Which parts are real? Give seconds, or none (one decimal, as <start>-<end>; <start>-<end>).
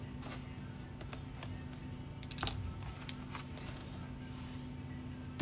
0.0-5.4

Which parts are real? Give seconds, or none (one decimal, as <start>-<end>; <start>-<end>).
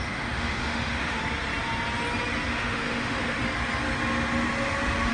1.2-2.5; 3.4-5.1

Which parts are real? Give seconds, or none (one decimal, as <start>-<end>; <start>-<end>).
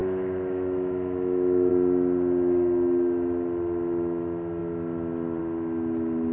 1.7-6.3